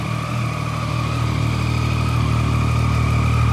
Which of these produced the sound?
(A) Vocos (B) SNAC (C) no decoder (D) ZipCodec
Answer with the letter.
C